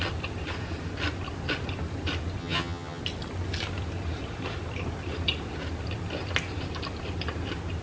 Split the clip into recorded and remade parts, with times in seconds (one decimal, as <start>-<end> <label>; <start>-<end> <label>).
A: 0.0-2.4 recorded; 2.4-3.0 remade; 3.0-7.8 recorded